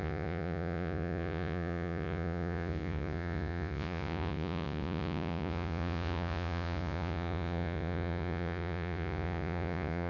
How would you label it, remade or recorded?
remade